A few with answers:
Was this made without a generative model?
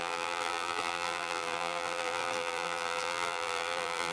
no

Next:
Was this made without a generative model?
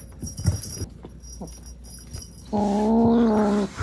yes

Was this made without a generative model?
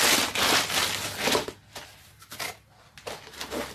yes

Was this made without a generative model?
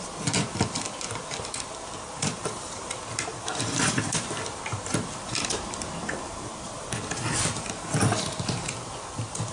no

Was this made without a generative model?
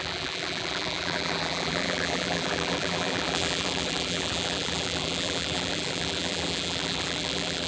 no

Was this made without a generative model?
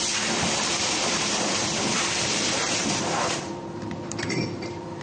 no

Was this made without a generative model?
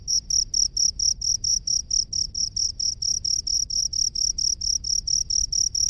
yes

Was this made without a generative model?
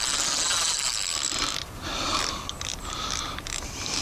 no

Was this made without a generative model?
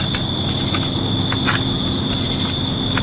yes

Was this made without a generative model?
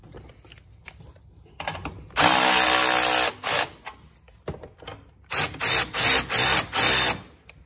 yes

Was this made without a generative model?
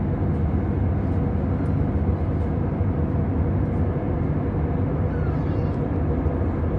yes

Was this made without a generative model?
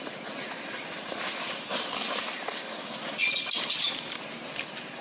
no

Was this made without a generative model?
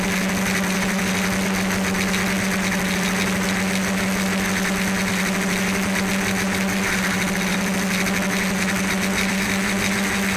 yes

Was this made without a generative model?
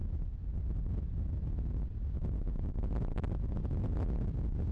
yes